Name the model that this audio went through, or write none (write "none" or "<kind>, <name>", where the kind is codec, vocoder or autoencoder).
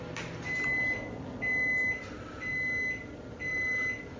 none